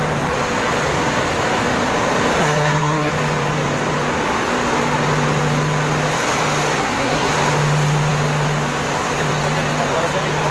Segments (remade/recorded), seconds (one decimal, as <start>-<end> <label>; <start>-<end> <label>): 0.0-2.4 recorded; 2.4-3.1 remade; 3.1-6.8 recorded; 6.8-7.3 remade; 7.3-10.5 recorded